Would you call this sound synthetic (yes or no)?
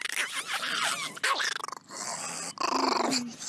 no